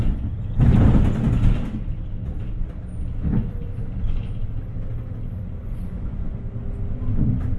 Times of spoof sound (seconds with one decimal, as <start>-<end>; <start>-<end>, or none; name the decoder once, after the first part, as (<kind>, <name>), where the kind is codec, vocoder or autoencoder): 5.6-6.4 (vocoder, Vocos)